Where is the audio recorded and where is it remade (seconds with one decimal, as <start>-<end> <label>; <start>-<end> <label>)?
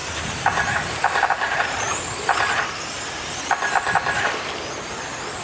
0.0-2.2 remade; 2.2-5.4 recorded